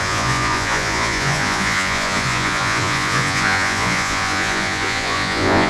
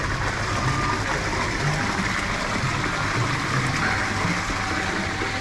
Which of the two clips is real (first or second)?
second